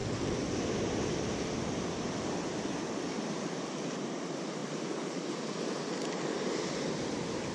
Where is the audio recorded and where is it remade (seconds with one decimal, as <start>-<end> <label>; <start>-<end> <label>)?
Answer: 0.0-7.5 recorded

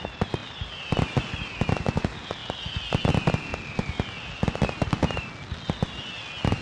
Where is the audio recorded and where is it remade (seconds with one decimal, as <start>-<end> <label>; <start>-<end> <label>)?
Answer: 0.0-6.6 recorded

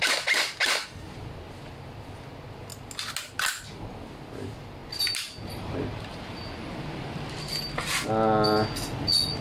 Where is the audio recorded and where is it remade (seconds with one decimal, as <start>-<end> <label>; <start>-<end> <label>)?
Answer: 0.0-4.8 recorded; 4.8-8.1 remade; 8.1-9.4 recorded

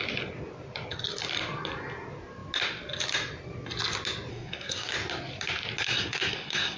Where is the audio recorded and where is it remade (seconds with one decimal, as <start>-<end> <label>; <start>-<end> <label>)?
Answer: 0.0-4.3 recorded; 4.3-4.9 remade; 4.9-5.8 recorded; 5.8-6.8 remade

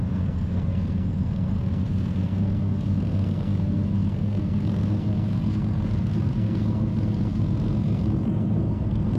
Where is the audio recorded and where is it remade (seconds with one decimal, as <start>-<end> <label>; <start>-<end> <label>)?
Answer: 0.0-9.2 remade

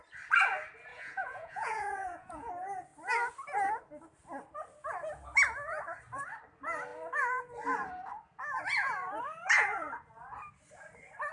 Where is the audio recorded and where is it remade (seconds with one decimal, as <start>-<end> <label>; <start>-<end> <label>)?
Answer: 0.0-0.9 recorded; 0.9-2.5 remade; 2.5-11.3 recorded

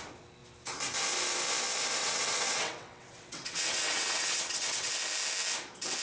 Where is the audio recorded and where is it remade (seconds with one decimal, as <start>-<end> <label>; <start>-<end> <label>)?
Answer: 0.0-2.0 recorded; 2.0-4.9 remade; 4.9-6.0 recorded

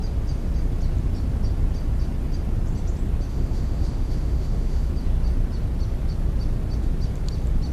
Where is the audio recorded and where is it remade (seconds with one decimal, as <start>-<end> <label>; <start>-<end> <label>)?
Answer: 0.0-3.3 recorded; 3.3-4.9 remade; 4.9-7.7 recorded